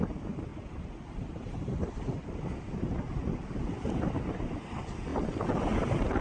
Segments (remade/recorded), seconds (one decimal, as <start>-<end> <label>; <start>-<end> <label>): 0.0-6.2 recorded